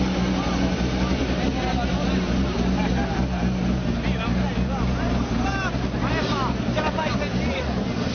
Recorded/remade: recorded